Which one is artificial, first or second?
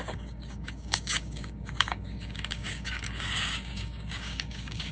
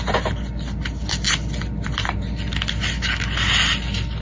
first